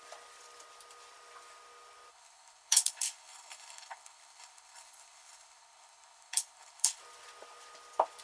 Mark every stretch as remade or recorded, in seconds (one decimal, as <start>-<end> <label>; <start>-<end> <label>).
0.0-2.1 recorded; 2.1-7.0 remade; 7.0-8.2 recorded